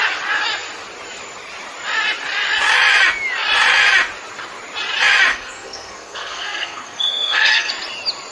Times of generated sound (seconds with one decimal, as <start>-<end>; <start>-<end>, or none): 5.3-7.7